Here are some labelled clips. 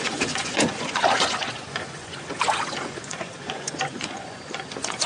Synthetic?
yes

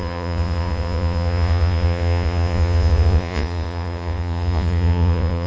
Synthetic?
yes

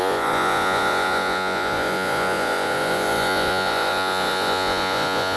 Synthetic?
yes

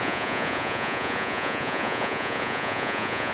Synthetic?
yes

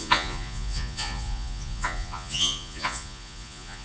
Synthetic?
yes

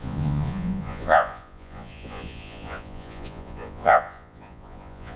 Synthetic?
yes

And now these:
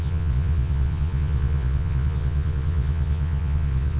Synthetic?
yes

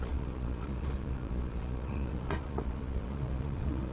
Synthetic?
yes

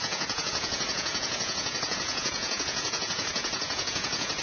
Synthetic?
yes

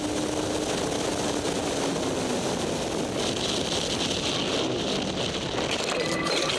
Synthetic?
no